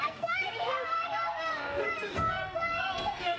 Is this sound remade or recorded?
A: remade